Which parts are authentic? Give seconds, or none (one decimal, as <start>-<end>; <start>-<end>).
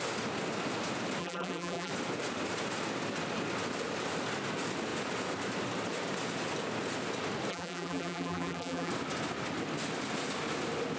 0.0-1.2; 1.9-7.5; 8.9-11.0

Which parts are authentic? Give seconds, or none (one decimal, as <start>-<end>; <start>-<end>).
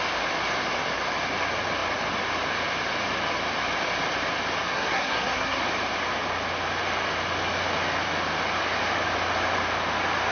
0.0-4.6; 5.6-10.3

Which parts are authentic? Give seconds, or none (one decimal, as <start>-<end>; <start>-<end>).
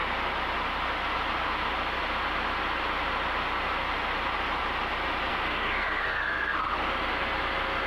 0.0-5.3; 6.7-7.9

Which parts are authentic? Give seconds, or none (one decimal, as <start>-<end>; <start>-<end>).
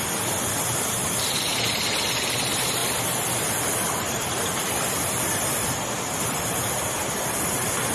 0.0-1.5; 2.2-2.8; 6.8-7.9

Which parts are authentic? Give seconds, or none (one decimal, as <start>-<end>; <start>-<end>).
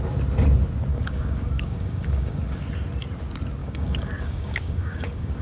0.0-0.9; 2.6-3.6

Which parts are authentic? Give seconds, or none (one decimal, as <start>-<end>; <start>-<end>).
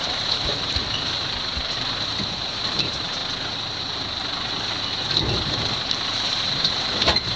3.2-5.4